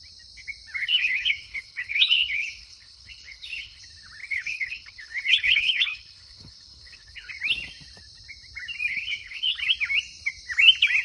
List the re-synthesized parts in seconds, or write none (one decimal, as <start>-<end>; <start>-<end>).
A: 0.8-3.8; 4.2-7.3; 8.9-9.6